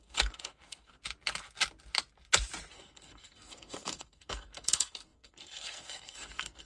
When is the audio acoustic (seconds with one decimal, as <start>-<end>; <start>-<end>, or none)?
1.0-2.7